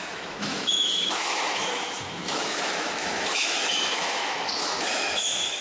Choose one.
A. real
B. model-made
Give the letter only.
B